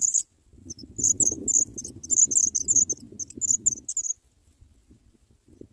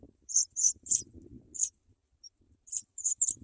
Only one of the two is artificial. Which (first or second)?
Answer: second